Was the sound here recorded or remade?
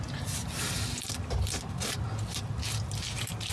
recorded